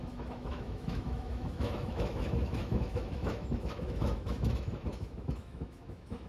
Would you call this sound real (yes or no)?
no